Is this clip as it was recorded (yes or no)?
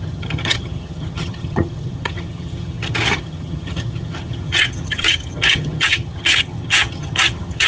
no